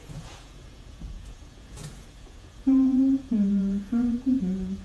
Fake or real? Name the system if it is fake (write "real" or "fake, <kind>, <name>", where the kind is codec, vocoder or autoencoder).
fake, vocoder, Vocos